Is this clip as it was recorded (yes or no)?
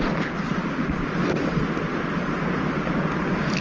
yes